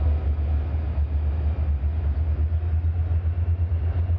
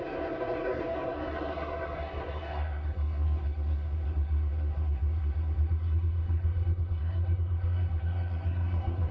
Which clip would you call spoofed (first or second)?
second